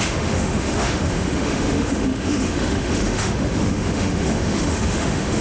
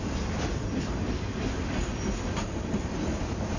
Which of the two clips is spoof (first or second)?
first